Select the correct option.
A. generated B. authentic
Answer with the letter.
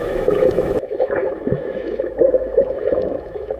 A